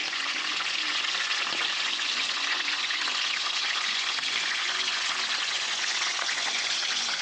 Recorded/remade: remade